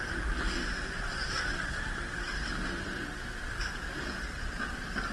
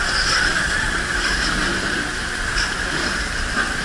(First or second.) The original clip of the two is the first